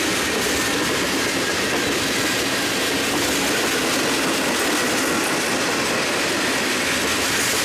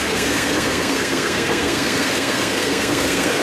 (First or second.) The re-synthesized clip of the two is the second